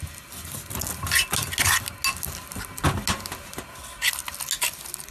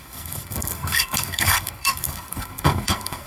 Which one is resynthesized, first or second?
second